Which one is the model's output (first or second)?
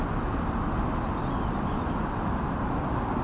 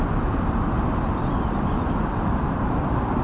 second